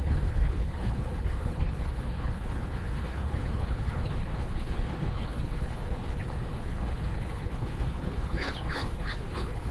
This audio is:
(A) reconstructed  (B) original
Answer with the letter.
A